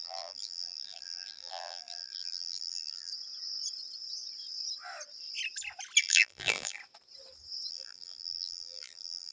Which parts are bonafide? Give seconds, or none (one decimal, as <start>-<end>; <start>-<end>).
3.1-6.0; 6.8-7.7